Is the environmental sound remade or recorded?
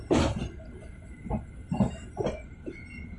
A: remade